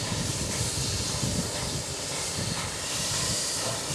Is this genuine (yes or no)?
no